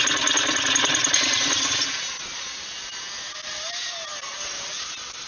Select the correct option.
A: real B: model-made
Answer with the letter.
A